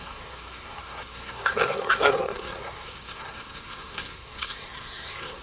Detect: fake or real fake